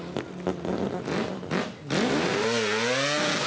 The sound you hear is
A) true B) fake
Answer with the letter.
A